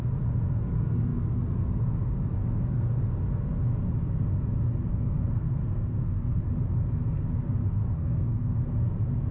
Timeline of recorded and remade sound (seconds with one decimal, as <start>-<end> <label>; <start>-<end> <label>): 0.0-4.9 recorded; 4.9-6.5 remade; 6.5-7.8 recorded; 7.8-8.7 remade; 8.7-9.3 recorded